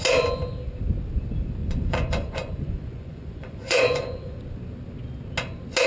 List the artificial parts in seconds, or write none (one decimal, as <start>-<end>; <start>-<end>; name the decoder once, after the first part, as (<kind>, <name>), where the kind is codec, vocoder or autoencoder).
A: 1.6-4.4 (vocoder, Vocos)